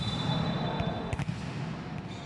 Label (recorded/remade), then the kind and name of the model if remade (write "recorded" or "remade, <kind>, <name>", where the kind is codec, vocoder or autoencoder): recorded